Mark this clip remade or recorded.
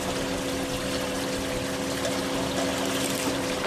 recorded